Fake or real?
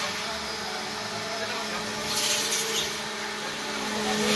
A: real